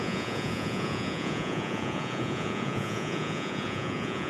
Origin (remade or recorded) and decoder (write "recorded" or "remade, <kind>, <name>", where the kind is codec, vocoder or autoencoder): remade, vocoder, Vocos